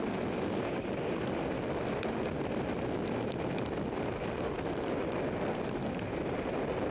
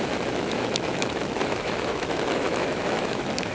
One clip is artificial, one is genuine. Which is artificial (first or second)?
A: second